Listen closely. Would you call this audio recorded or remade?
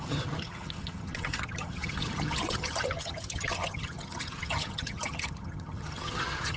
remade